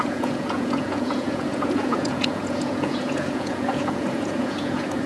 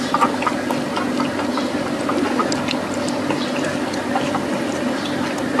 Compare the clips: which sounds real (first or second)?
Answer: second